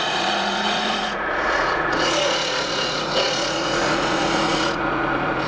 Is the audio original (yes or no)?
no